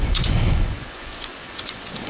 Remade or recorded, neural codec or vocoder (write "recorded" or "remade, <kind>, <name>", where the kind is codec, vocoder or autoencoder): remade, vocoder, Vocos